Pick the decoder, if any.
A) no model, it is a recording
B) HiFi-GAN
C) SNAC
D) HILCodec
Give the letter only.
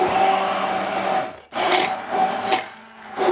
A